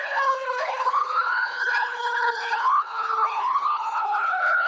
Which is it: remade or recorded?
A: remade